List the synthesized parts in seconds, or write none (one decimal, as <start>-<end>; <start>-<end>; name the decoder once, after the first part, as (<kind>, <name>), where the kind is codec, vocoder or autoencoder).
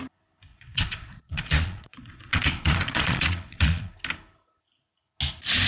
0.5-3.9 (vocoder, Vocos)